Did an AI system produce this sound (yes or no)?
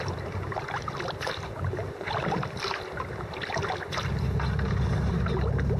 no